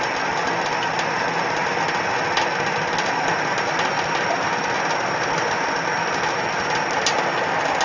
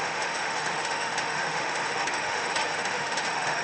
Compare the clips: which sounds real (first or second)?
first